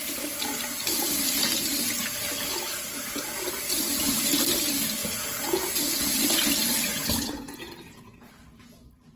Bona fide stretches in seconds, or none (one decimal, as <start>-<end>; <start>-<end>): 0.0-5.0; 6.1-6.9; 8.3-9.2